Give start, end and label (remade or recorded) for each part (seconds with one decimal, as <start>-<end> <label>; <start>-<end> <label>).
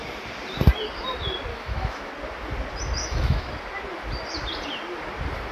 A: 0.0-1.5 recorded; 1.5-2.1 remade; 2.1-3.0 recorded; 3.0-3.5 remade; 3.5-5.5 recorded